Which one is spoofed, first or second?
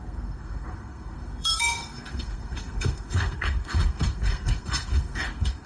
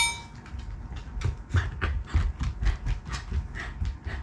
first